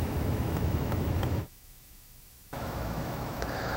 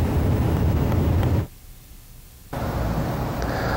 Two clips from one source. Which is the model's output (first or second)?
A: first